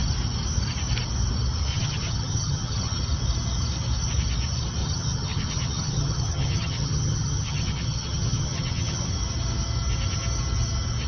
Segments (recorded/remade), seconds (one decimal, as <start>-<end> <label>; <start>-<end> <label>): 0.0-1.7 recorded; 1.7-3.0 remade; 3.0-4.8 recorded; 4.8-9.1 remade; 9.1-11.1 recorded